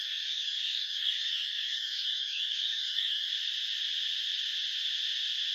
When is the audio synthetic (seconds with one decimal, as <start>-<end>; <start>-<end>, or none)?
0.0-3.3